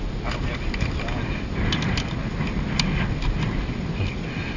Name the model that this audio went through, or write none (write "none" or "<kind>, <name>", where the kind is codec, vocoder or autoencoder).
none